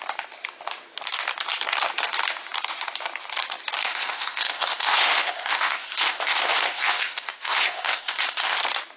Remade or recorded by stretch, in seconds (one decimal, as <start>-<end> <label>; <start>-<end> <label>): 0.0-3.8 recorded; 3.8-8.6 remade; 8.6-9.0 recorded